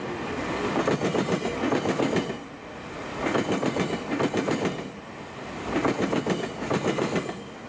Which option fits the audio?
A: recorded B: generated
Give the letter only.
A